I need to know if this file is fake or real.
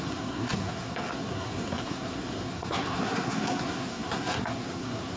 fake